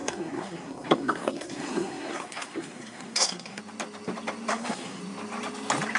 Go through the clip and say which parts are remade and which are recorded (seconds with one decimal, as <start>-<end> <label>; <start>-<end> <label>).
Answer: 0.0-3.6 remade; 3.6-4.5 recorded; 4.5-5.0 remade; 5.0-6.0 recorded